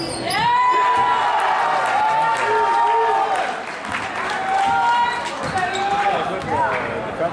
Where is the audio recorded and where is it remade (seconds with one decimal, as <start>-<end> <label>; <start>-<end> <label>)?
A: 0.0-7.3 recorded